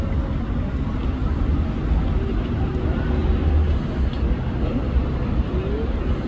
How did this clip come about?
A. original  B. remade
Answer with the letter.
A